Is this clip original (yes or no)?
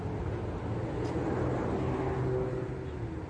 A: yes